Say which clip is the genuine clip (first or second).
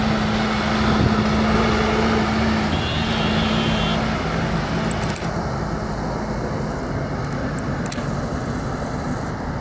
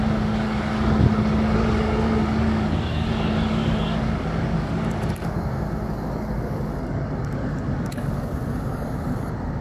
first